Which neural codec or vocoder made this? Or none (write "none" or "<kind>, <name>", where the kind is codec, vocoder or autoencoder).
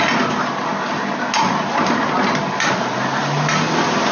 none